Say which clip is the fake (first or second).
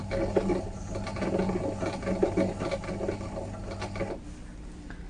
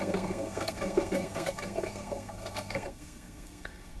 second